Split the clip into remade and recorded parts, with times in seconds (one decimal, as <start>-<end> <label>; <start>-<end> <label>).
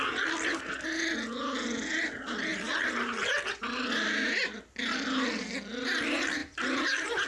0.0-7.3 recorded